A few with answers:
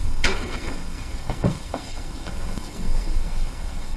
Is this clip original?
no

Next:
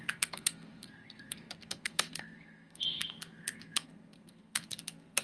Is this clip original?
no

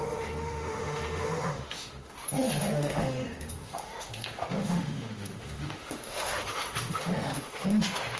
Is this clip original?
no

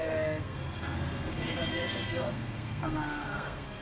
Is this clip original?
no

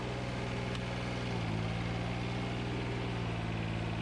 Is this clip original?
yes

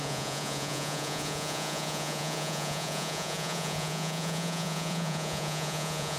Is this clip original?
no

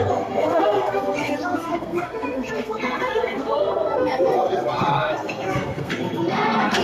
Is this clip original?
no